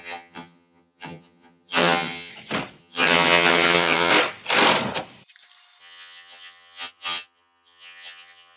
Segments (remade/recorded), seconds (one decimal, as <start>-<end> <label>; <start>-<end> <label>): 0.0-2.3 remade; 2.3-2.8 recorded; 2.8-4.1 remade; 4.1-5.8 recorded; 5.8-8.6 remade